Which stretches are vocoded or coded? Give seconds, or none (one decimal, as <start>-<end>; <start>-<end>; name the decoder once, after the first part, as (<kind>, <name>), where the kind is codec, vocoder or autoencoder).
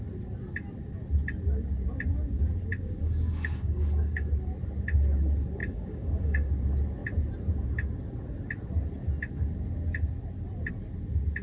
3.0-4.3 (codec, DAC); 5.6-6.5